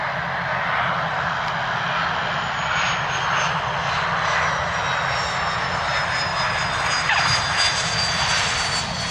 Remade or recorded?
recorded